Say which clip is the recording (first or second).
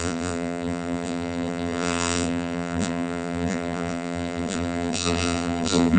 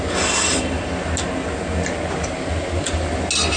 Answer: second